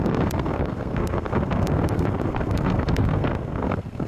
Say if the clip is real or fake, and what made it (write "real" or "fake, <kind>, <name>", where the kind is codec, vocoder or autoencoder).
fake, codec, SNAC